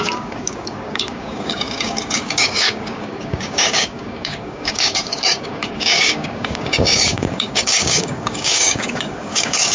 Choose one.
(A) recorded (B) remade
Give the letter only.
B